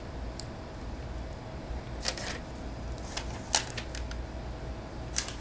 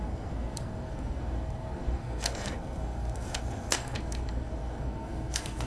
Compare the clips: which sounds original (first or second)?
first